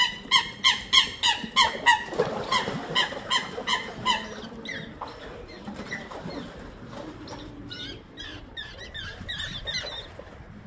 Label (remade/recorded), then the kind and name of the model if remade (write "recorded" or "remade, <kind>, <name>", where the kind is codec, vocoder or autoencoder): recorded